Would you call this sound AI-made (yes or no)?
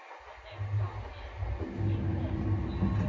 no